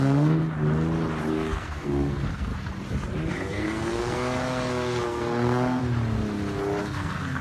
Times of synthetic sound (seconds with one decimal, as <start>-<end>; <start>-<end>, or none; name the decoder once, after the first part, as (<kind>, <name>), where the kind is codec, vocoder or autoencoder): 0.0-0.4 (codec, SNAC); 1.3-2.5; 3.3-5.8; 6.8-7.4